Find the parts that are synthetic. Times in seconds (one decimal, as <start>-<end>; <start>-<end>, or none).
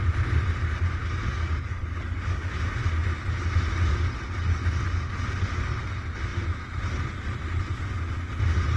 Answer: 1.0-2.5